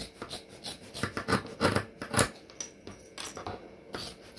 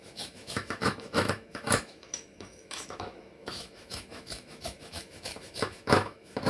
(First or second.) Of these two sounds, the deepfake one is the second